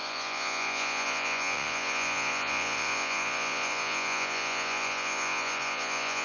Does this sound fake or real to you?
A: fake